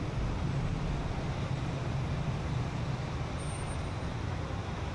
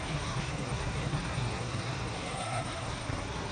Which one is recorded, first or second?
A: first